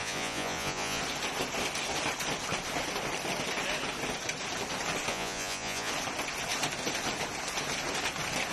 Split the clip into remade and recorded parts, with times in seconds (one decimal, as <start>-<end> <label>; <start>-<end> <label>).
0.0-1.0 remade; 1.0-5.1 recorded; 5.1-5.9 remade; 5.9-8.5 recorded